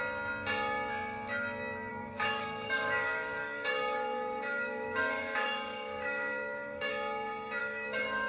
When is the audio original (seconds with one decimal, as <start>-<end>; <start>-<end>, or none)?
0.0-1.9; 6.9-7.6